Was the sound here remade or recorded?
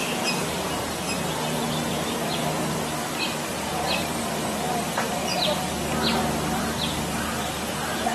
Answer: recorded